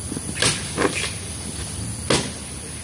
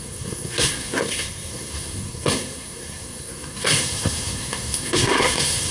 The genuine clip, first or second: first